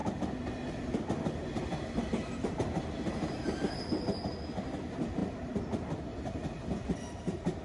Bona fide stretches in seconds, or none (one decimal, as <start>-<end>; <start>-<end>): 0.0-7.6